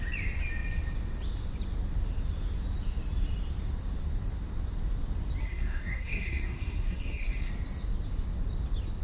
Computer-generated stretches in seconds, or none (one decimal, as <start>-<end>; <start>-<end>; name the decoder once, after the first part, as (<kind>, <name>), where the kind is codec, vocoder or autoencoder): 5.4-7.5 (codec, SNAC)

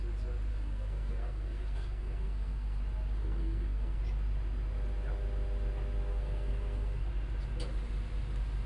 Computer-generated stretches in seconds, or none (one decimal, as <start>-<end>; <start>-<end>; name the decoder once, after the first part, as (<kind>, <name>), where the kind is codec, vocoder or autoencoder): 0.5-2.8 (codec, SNAC); 3.2-4.0; 6.1-7.1

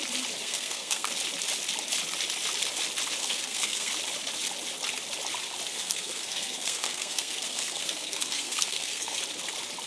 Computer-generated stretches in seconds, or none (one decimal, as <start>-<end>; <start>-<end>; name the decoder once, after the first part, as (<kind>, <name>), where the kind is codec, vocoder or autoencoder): 0.4-1.1 (codec, SNAC); 3.2-3.9; 5.7-9.2

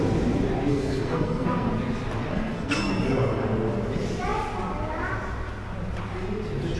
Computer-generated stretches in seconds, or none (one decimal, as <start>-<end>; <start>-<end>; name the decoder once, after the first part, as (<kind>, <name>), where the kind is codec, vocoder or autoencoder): 0.7-1.7 (codec, SNAC); 2.3-2.9

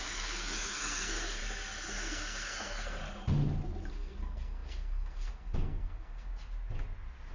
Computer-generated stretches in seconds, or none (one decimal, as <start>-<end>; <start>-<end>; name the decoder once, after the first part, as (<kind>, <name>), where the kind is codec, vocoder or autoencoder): 0.0-1.4 (codec, SNAC); 1.9-3.0; 3.9-6.3

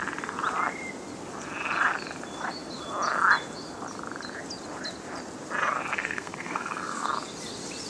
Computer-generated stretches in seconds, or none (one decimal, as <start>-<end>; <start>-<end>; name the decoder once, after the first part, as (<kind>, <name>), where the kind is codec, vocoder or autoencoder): 5.9-7.1 (codec, SNAC)

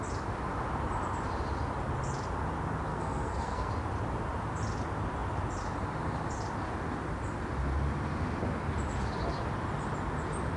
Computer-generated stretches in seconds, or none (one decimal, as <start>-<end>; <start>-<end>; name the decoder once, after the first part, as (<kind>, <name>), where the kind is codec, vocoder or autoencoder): 2.9-3.7 (codec, SNAC)